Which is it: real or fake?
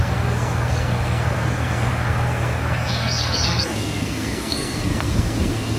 fake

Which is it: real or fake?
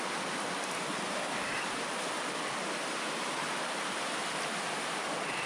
real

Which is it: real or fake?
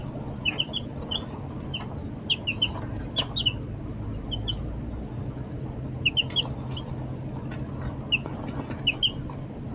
real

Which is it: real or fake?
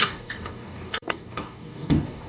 fake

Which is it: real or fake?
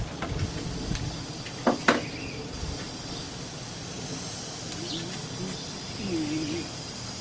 real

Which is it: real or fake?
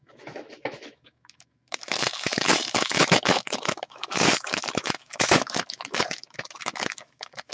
fake